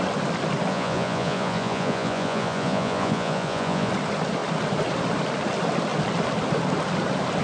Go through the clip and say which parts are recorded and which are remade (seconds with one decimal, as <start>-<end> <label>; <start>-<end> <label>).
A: 0.0-0.7 recorded; 0.7-3.9 remade; 3.9-7.4 recorded